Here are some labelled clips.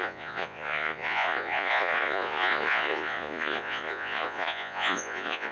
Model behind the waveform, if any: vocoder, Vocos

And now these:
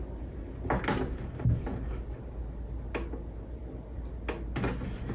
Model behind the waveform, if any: none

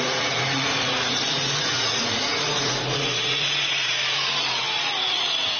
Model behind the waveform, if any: vocoder, Vocos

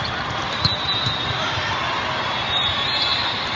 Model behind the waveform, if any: none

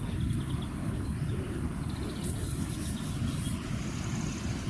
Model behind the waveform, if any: none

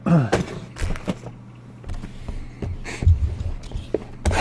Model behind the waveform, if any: none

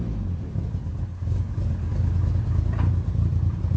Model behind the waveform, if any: none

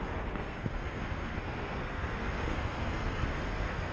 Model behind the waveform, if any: codec, SNAC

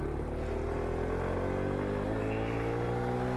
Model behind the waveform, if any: none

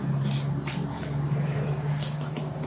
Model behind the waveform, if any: none